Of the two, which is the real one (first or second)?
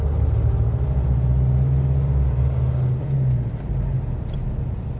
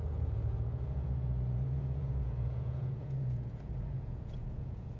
first